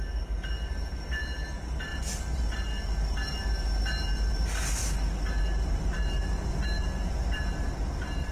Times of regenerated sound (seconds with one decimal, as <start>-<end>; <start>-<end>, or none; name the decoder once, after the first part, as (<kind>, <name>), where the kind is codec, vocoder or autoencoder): 0.0-4.8 (vocoder, BigVGAN v2); 5.7-8.3